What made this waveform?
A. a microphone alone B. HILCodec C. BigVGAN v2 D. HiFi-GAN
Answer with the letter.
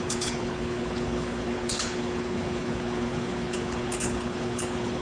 B